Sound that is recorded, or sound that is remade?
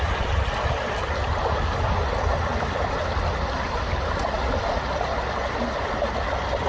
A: recorded